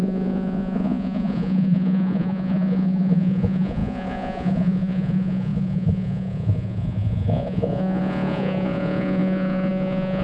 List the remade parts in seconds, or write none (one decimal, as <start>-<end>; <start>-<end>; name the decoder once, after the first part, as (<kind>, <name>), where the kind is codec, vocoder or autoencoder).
0.0-10.2 (vocoder, Vocos)